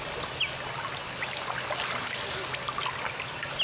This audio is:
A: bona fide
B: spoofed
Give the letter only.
A